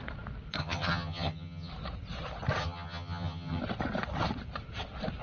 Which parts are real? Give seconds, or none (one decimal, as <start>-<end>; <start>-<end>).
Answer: 0.0-0.6; 1.7-2.6; 3.6-5.2